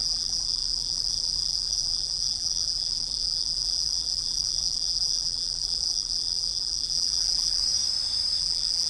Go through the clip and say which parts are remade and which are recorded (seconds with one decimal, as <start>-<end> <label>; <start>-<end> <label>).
0.0-7.6 remade; 7.6-8.4 recorded; 8.4-8.9 remade